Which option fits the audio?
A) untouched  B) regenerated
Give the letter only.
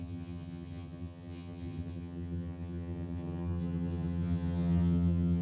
B